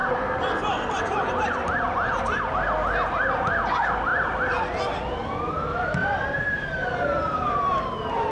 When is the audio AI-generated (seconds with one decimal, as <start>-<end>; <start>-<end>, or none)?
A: 0.0-2.4; 6.0-8.3